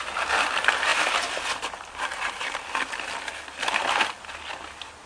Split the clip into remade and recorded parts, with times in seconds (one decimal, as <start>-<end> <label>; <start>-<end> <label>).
0.0-5.1 recorded